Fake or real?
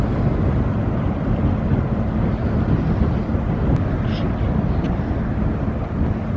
real